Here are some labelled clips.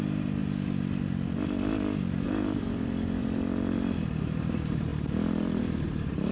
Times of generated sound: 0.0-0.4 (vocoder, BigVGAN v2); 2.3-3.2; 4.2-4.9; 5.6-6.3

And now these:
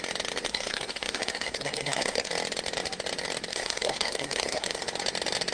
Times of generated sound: 0.5-2.3 (codec, SNAC); 3.5-4.8